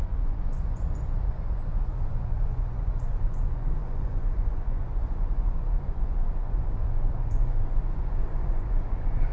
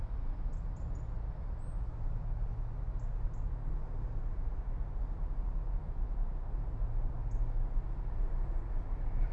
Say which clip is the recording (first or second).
second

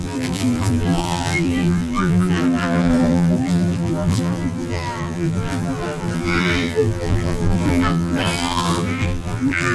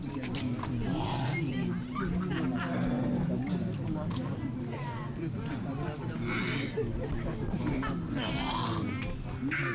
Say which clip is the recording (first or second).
second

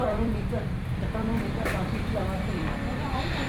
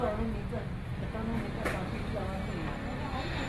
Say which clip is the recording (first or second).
second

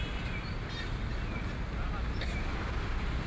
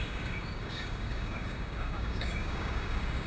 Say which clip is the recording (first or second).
first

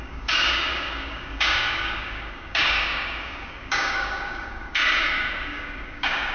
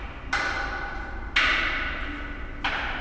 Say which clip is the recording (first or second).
second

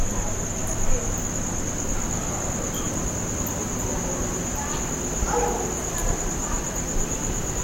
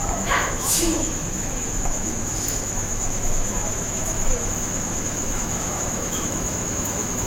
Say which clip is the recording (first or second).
first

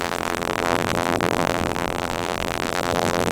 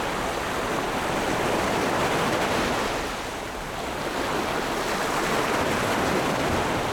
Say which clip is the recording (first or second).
second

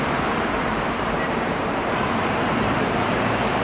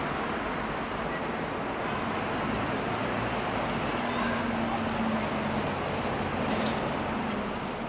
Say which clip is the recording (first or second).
second